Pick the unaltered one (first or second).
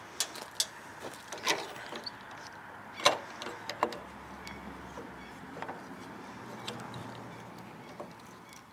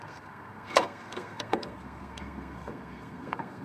first